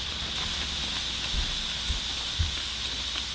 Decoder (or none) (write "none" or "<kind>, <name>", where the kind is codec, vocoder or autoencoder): none